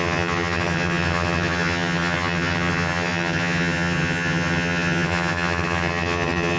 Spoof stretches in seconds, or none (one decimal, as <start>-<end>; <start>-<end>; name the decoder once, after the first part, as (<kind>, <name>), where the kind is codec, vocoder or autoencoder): 0.0-6.6 (vocoder, HiFi-GAN)